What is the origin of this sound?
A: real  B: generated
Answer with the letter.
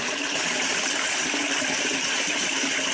A